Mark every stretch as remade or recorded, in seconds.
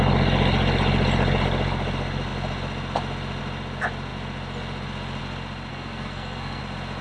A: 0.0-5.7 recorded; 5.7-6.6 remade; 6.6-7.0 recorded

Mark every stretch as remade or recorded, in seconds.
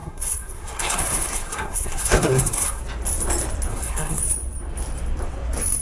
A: 0.0-2.8 remade; 2.8-3.7 recorded; 3.7-4.2 remade; 4.2-5.8 recorded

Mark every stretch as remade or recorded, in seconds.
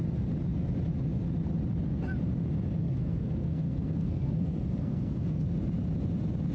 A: 0.0-2.8 recorded; 2.8-5.4 remade; 5.4-6.5 recorded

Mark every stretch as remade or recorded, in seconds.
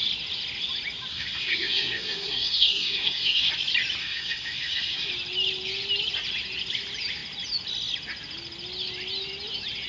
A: 0.0-1.1 recorded; 1.1-3.5 remade; 3.5-4.0 recorded; 4.0-5.1 remade; 5.1-9.9 recorded